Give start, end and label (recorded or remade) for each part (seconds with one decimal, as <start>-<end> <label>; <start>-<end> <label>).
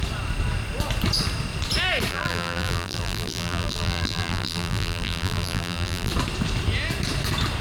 0.0-2.1 recorded; 2.1-6.1 remade; 6.1-7.6 recorded